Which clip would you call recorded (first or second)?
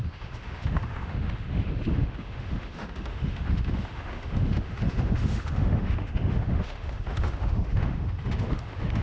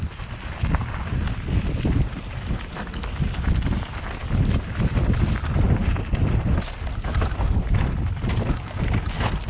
second